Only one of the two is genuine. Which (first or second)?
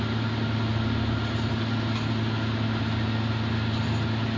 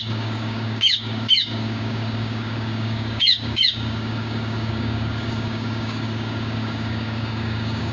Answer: first